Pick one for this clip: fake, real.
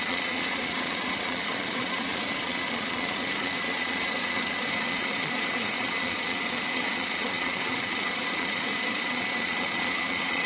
fake